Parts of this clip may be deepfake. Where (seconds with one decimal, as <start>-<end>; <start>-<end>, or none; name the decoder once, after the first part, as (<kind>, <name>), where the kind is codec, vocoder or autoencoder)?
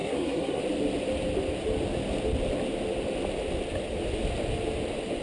0.0-0.6 (codec, SNAC)